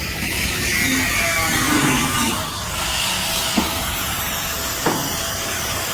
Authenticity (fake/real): fake